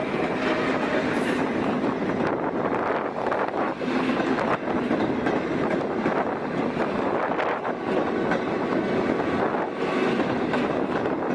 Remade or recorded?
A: recorded